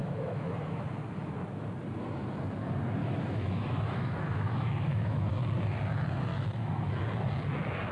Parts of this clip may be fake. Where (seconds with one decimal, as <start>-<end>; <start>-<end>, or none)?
0.0-0.8; 3.0-5.3; 6.3-6.9